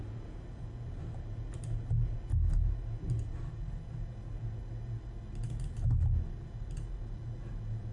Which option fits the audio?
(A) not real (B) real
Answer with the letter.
B